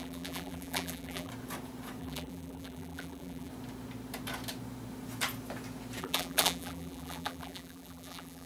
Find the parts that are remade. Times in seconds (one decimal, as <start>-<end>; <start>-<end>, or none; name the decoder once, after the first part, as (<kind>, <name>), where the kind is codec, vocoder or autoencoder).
0.0-1.3 (vocoder, BigVGAN v2); 2.0-3.5; 6.0-8.5